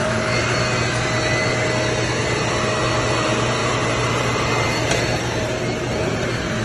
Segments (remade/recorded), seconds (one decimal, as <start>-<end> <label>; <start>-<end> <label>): 0.0-0.6 remade; 0.6-3.6 recorded; 3.6-6.6 remade